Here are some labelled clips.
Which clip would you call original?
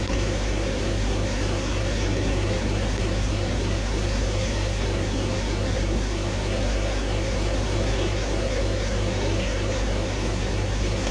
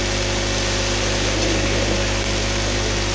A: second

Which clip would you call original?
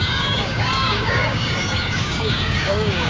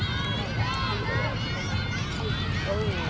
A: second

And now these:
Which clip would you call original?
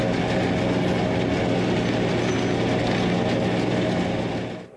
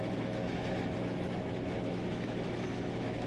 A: first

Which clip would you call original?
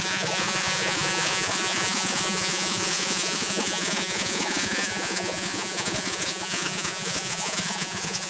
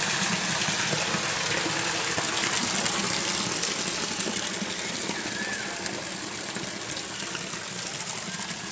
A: second